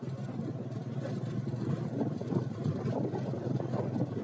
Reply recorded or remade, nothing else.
recorded